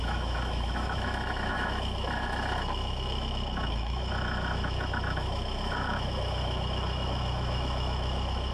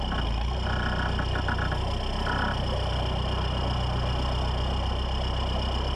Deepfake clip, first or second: first